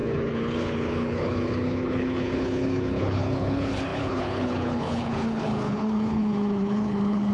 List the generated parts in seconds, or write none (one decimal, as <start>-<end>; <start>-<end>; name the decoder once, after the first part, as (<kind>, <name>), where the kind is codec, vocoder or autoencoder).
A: 0.0-7.3 (codec, HILCodec)